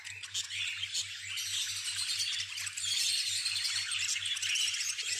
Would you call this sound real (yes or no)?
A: yes